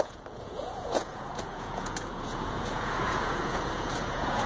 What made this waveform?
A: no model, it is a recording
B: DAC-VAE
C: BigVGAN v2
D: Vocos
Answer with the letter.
D